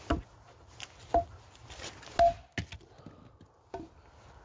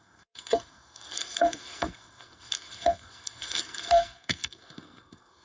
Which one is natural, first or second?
first